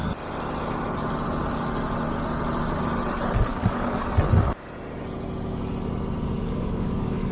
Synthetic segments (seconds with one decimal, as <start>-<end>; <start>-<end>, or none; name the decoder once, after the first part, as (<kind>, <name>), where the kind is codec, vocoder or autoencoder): 3.5-4.0 (codec, DAC); 6.4-7.3